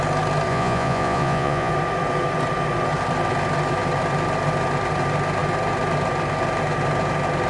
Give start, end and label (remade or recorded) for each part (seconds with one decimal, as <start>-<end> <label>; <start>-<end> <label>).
0.0-0.5 recorded; 0.5-1.7 remade; 1.7-7.5 recorded